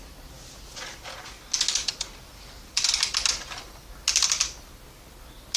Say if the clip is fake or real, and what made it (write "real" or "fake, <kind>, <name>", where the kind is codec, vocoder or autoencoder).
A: real